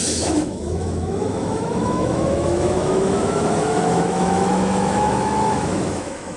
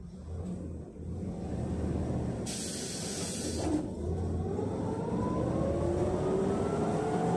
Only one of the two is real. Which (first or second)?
second